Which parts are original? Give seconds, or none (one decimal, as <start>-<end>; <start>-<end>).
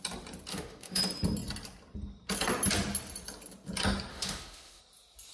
0.0-0.5; 1.0-4.1; 4.8-5.3